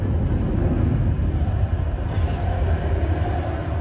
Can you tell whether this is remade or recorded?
recorded